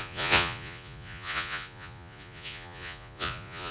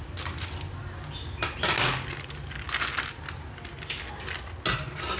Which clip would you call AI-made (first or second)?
first